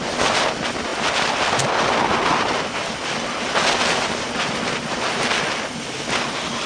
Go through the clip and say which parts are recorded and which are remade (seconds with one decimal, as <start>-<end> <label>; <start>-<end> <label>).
0.0-6.7 recorded